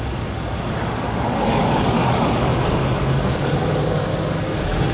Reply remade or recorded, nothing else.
remade